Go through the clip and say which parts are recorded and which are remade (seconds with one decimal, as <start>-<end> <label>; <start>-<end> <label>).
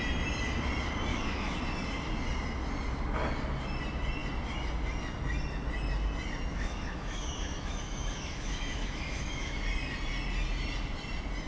0.0-1.1 recorded; 1.1-1.6 remade; 1.6-6.5 recorded; 6.5-9.6 remade; 9.6-11.5 recorded